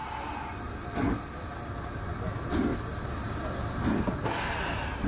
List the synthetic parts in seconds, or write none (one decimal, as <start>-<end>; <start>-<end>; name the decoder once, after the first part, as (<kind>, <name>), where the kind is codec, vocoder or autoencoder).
none